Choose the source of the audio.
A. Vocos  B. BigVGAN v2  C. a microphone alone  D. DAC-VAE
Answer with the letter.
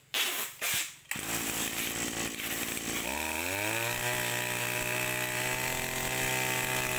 C